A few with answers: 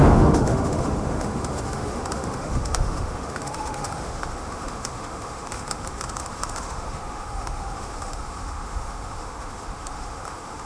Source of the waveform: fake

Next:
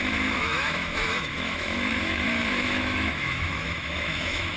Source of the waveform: fake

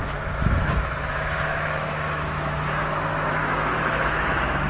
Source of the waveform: fake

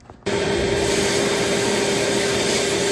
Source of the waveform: real